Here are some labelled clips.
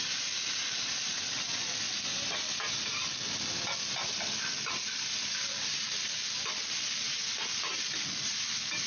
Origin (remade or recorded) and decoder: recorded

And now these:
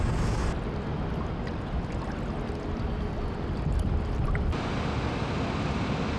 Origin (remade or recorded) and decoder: recorded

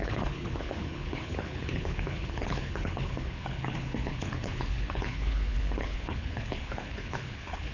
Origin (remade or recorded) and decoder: remade, codec, HILCodec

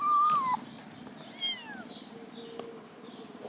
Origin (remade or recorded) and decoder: recorded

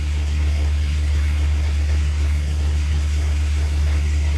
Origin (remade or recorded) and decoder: remade, codec, SNAC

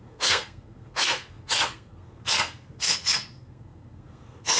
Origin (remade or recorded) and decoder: remade, codec, SNAC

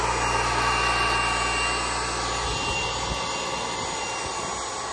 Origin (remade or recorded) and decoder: recorded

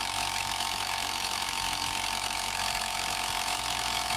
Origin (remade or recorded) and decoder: remade, autoencoder, DAC-VAE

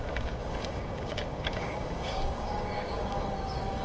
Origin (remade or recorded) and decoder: remade, codec, DAC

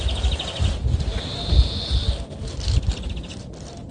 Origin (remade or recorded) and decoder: remade, vocoder, BigVGAN v2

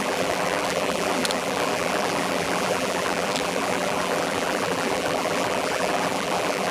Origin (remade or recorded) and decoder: remade, vocoder, BigVGAN v2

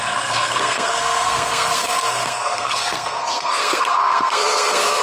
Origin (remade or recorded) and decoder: remade, codec, SNAC